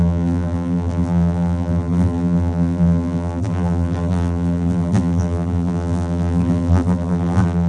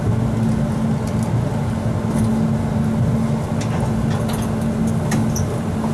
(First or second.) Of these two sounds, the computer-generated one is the first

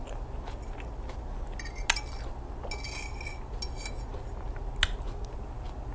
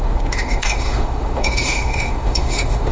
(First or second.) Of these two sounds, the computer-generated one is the second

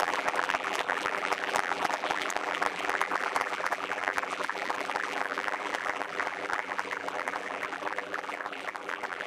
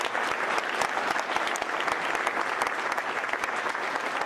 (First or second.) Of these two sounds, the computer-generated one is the first